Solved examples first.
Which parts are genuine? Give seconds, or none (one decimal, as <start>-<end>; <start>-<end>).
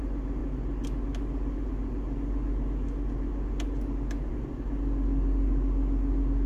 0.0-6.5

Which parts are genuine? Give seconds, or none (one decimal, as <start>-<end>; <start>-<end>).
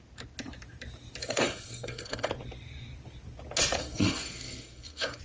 0.0-1.2; 2.3-3.8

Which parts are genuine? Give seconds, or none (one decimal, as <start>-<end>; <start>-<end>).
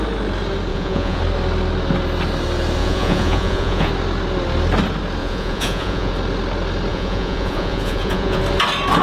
0.0-0.7; 1.2-2.8; 3.9-5.2; 6.1-6.9; 8.4-9.0